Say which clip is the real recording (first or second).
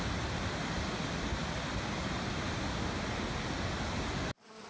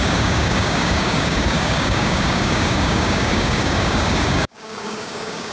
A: first